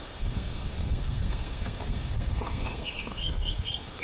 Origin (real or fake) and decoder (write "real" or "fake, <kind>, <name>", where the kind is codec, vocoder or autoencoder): fake, codec, SNAC